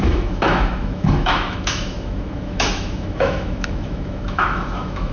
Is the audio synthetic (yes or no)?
yes